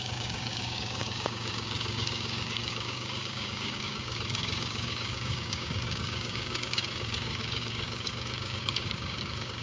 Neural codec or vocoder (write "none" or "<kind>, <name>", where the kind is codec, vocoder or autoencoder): codec, DAC